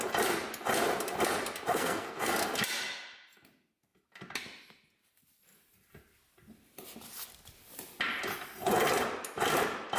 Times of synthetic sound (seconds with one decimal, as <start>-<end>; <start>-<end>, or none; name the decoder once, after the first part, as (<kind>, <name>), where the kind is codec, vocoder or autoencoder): 1.7-2.3 (codec, SNAC)